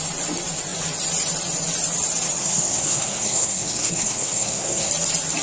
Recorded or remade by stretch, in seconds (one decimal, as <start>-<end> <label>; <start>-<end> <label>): 0.0-2.4 recorded; 2.4-4.9 remade; 4.9-5.4 recorded